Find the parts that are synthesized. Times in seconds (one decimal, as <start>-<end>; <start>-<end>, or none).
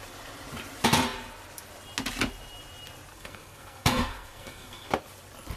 3.1-4.9